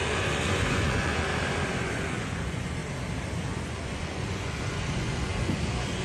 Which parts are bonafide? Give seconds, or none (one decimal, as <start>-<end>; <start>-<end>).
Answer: 1.3-1.8; 2.8-3.5